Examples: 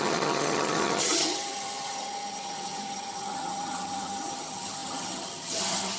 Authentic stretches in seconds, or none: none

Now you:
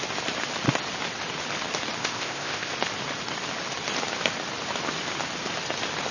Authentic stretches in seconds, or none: 0.0-2.0; 2.7-6.1

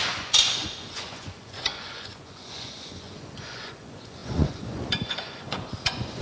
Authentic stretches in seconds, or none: none